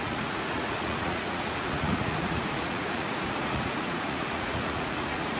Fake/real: fake